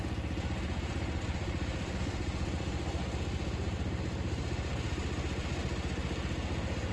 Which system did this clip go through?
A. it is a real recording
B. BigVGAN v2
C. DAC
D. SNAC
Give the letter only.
A